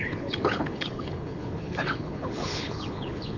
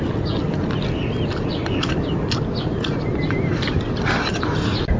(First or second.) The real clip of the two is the second